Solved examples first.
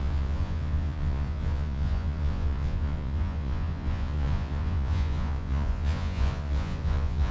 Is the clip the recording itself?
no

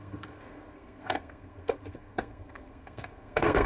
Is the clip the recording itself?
no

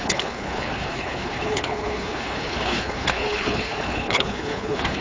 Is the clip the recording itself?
no